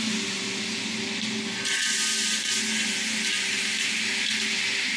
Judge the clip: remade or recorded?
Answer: recorded